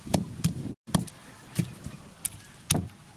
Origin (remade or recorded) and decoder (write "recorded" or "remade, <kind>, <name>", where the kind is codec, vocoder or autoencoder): recorded